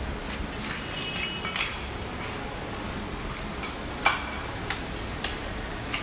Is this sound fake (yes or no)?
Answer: no